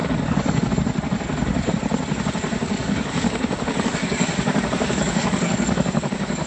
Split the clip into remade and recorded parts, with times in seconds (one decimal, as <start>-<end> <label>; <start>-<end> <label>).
0.0-0.7 remade; 0.7-2.6 recorded; 2.6-6.5 remade